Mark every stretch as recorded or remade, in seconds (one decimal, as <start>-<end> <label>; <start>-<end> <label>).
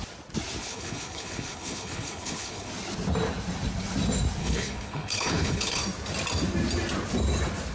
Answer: 0.0-0.6 recorded; 0.6-2.7 remade; 2.7-4.4 recorded; 4.4-5.8 remade; 5.8-7.7 recorded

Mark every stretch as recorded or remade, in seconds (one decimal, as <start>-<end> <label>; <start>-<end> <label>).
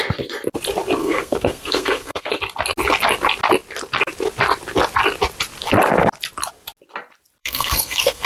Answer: 0.0-1.0 recorded; 1.0-2.4 remade; 2.4-7.4 recorded; 7.4-8.3 remade